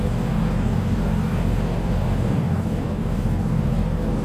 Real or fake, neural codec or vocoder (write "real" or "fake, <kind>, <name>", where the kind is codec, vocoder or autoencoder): fake, codec, DAC